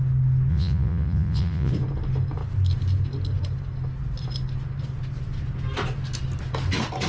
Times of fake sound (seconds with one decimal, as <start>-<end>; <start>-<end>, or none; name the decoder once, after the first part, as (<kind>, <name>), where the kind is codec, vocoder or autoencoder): 0.5-1.7 (vocoder, Vocos)